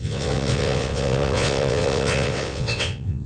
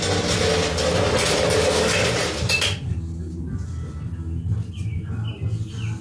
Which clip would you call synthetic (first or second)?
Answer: first